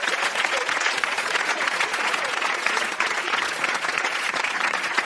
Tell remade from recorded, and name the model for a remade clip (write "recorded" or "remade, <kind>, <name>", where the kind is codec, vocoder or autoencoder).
remade, vocoder, Vocos